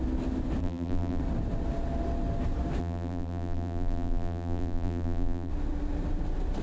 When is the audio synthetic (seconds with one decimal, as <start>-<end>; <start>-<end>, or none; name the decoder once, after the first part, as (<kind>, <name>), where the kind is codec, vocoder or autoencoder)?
0.6-1.2 (vocoder, BigVGAN v2); 2.8-5.5